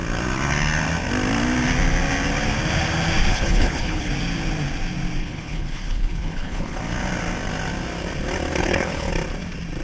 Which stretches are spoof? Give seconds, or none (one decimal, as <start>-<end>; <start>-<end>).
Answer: 3.3-4.1; 5.2-6.8; 8.6-9.1